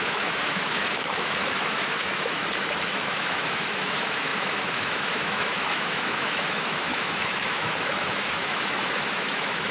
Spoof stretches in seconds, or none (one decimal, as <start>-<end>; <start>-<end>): 0.0-2.4; 2.9-9.7